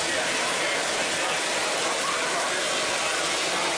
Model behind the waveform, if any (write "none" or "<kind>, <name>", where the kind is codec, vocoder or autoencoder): none